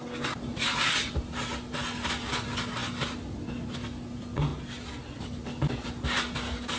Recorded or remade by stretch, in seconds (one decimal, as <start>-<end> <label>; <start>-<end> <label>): 0.0-0.5 recorded; 0.5-1.1 remade; 1.1-6.8 recorded